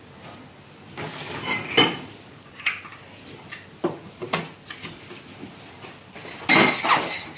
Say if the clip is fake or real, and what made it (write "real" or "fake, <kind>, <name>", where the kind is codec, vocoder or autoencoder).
real